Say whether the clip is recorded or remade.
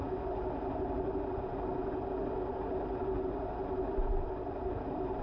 recorded